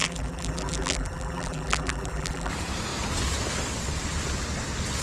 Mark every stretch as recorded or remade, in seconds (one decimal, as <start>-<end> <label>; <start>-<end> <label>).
0.0-2.5 remade; 2.5-5.0 recorded